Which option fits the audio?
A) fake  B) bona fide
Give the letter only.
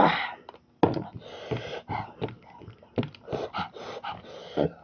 B